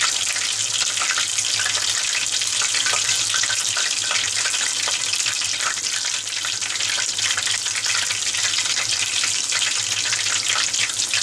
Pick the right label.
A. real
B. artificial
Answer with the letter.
A